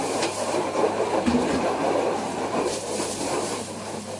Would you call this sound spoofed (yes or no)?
yes